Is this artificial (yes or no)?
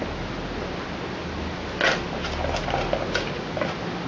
no